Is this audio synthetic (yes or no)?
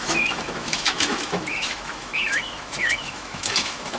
yes